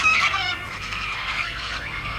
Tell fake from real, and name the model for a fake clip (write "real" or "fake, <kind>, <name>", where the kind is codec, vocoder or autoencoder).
fake, codec, SNAC